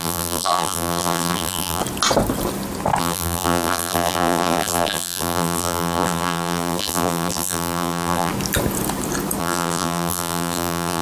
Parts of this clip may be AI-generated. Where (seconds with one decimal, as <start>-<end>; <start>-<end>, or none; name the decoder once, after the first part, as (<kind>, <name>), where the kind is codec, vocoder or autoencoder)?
0.0-1.8 (vocoder, BigVGAN v2); 3.0-8.3; 9.4-11.0